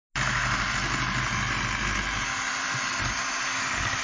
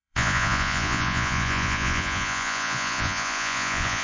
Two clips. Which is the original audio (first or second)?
first